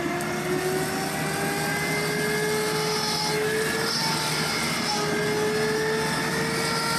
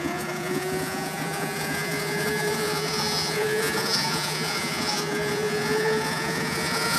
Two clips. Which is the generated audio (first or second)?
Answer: second